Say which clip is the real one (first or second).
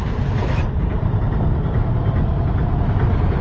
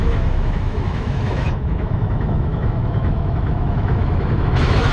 first